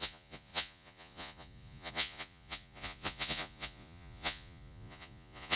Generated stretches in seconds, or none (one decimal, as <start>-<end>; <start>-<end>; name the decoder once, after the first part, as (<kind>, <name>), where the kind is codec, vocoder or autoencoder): 0.0-5.6 (vocoder, Vocos)